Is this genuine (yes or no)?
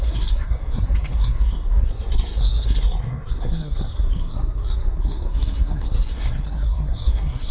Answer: no